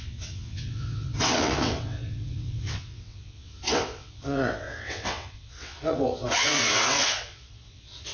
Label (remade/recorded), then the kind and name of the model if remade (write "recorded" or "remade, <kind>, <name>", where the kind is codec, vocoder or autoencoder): remade, vocoder, WaveNeXt